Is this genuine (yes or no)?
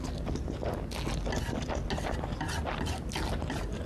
yes